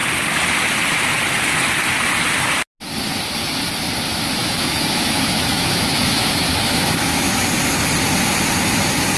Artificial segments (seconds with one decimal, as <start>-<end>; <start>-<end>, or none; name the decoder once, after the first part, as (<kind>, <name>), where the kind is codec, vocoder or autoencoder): 4.4-7.4 (autoencoder, DAC-VAE)